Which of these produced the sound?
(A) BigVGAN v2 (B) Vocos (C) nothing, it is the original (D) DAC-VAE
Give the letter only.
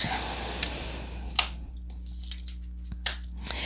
C